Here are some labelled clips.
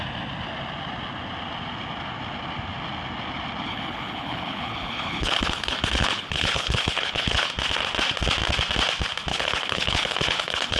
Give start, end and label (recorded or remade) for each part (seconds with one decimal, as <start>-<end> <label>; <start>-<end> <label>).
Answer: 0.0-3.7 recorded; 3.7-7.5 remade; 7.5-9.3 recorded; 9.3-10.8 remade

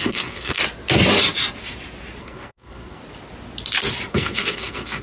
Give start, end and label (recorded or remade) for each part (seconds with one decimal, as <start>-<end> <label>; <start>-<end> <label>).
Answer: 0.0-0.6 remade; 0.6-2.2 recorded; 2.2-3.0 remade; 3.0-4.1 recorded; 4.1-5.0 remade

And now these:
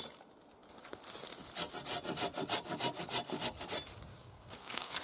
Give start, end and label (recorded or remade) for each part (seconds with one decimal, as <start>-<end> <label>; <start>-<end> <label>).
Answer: 0.0-4.1 recorded; 4.1-5.0 remade

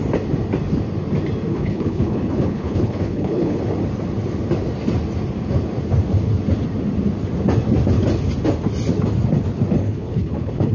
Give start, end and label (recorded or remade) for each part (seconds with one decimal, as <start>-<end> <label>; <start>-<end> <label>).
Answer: 0.0-1.5 recorded; 1.5-3.6 remade; 3.6-9.8 recorded; 9.8-10.7 remade

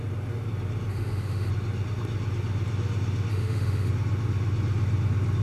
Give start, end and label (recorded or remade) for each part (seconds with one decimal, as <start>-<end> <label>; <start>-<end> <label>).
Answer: 0.0-0.9 recorded; 0.9-1.5 remade; 1.5-3.3 recorded; 3.3-3.9 remade; 3.9-5.4 recorded

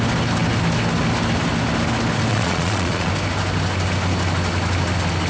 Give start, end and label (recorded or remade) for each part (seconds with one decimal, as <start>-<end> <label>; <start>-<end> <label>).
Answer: 0.0-2.3 recorded; 2.3-3.1 remade; 3.1-5.3 recorded